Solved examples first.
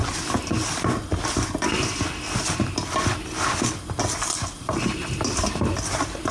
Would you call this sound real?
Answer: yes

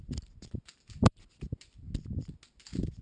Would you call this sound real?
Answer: yes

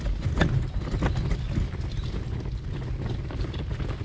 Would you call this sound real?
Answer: yes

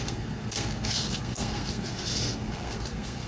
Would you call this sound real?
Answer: no